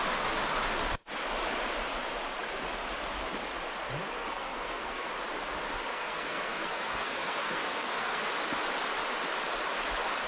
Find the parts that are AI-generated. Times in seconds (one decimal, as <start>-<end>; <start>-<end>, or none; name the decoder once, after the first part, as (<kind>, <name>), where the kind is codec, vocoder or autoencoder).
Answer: 4.2-5.1 (codec, SNAC); 5.9-8.3